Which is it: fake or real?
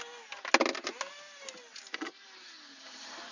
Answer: real